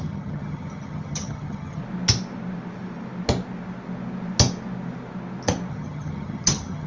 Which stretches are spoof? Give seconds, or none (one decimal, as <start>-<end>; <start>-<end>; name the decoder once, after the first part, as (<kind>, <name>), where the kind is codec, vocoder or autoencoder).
0.0-1.8 (vocoder, HiFi-GAN); 5.7-6.9